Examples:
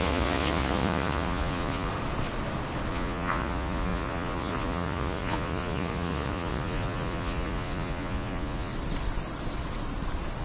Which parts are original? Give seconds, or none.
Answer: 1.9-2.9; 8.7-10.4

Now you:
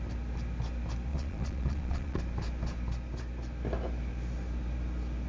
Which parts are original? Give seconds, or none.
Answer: 0.0-1.1; 2.2-5.3

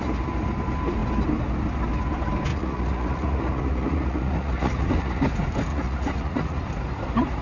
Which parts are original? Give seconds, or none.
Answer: 0.0-2.5; 5.2-5.7; 6.6-7.4

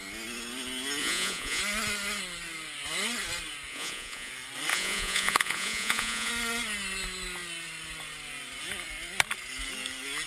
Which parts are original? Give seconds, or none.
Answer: 0.0-1.0; 1.6-3.7; 4.3-4.7; 6.3-10.3

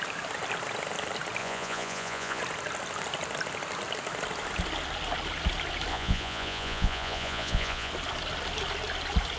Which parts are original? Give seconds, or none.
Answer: 0.0-1.4; 2.4-5.9; 7.9-9.4

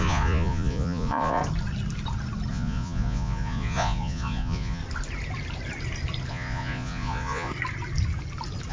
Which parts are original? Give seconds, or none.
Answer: 1.4-2.5; 4.8-6.3; 7.5-8.7

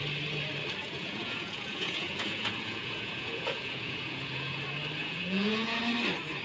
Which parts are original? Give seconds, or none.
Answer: 0.0-0.8; 4.6-5.0; 5.8-6.4

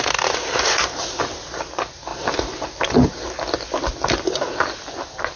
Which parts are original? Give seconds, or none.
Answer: 0.0-5.4